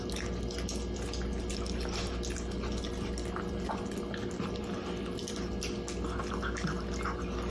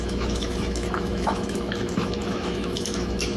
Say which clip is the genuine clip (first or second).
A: first